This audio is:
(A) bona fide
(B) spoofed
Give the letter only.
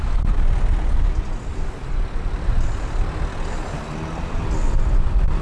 A